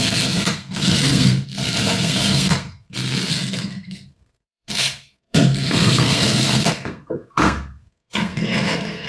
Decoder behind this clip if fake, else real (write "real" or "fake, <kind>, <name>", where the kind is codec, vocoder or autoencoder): fake, codec, SNAC